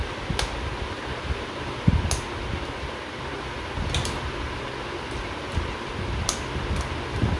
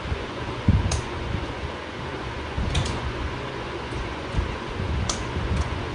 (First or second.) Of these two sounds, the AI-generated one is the second